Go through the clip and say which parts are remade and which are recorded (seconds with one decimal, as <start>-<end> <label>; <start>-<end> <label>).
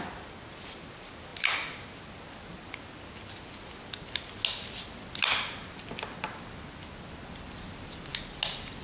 0.0-8.8 recorded